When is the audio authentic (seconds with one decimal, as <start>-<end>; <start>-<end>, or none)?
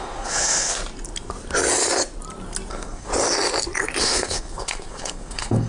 0.8-2.7; 3.1-4.0